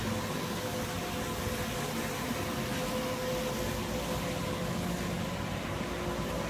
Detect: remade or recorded recorded